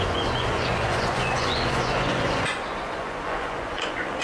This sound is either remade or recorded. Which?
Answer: remade